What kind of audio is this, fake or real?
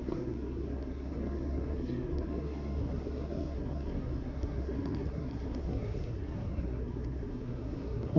fake